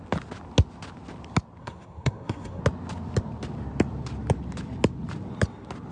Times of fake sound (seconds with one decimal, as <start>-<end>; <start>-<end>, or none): 1.6-2.6